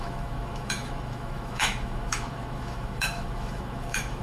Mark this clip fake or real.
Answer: fake